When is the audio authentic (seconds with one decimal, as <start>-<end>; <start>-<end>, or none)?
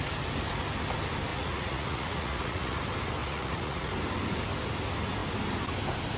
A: 0.0-1.3; 2.8-3.2; 3.9-6.2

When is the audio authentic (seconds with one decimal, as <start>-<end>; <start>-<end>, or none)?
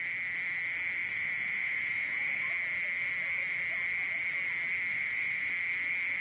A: 0.0-1.1; 2.5-4.9; 5.5-6.2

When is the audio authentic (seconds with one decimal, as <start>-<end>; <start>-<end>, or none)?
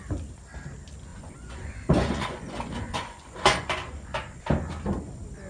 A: 0.0-1.1; 4.4-5.5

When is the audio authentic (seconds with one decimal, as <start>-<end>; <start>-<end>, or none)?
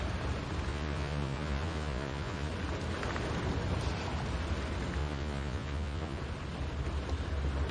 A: 0.0-0.7; 2.5-5.0; 6.2-7.7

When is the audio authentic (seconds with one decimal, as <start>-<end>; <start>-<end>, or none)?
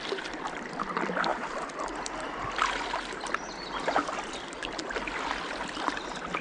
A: 0.0-6.4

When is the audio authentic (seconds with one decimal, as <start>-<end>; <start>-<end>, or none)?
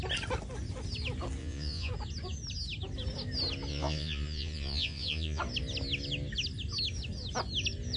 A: 0.0-1.4; 1.9-3.7; 5.4-8.0